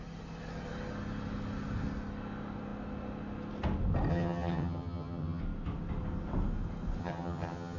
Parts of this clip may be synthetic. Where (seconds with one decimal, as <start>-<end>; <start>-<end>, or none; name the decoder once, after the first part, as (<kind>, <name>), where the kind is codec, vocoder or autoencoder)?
4.1-5.4 (vocoder, HiFi-GAN); 7.0-7.8